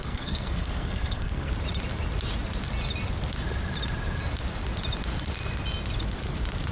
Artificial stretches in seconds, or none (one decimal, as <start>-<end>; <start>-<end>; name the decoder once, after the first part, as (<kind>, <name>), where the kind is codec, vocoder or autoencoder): 0.0-1.5 (codec, SNAC)